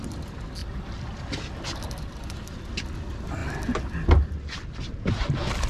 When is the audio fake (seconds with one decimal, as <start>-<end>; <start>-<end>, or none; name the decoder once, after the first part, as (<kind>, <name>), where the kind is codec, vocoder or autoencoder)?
none